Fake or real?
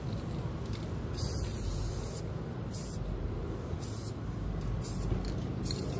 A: real